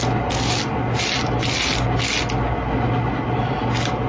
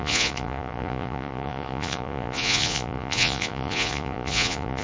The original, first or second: first